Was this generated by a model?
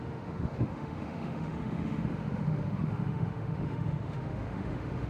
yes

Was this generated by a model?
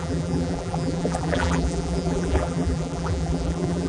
yes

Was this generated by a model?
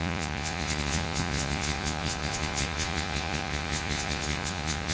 yes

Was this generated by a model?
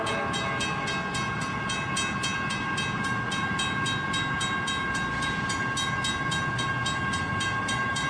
no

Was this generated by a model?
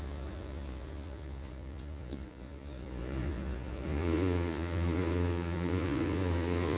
yes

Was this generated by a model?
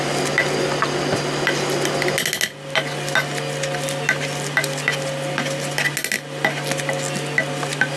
no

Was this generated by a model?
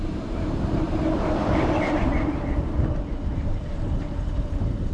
yes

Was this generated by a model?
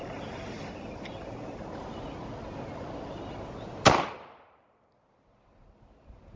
no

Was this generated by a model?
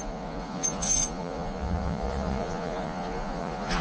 yes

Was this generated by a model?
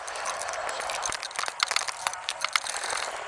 no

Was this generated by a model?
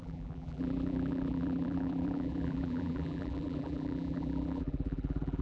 yes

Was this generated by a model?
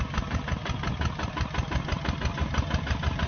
no